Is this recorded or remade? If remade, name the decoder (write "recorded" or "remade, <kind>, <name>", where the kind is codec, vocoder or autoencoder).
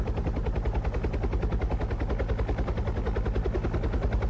recorded